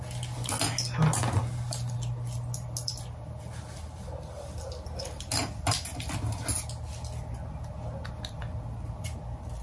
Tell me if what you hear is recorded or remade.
recorded